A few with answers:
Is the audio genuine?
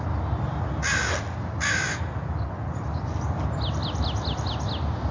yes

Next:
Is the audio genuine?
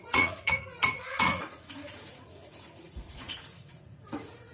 no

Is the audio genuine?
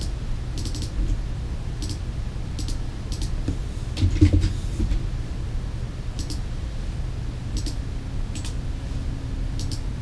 yes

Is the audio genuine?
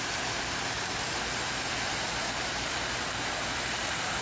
yes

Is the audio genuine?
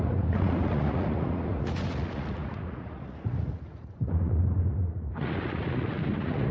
no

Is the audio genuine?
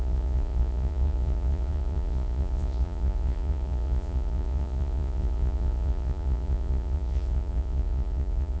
no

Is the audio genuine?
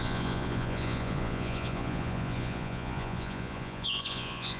no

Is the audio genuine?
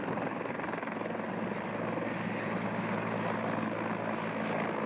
yes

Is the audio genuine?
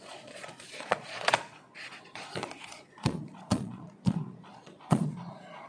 no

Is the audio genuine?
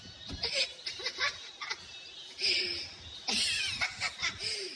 yes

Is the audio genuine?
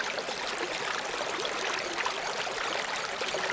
yes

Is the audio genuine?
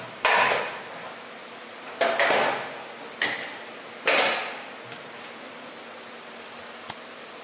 yes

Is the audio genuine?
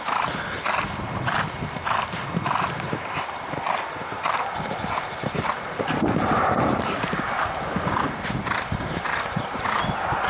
yes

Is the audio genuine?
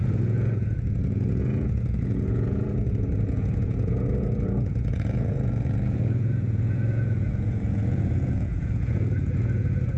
no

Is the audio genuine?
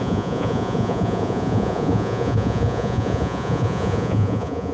no